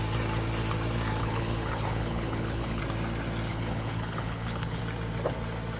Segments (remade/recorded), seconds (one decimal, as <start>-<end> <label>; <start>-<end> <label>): 0.0-1.2 recorded; 1.2-2.8 remade; 2.8-3.5 recorded; 3.5-4.8 remade; 4.8-5.8 recorded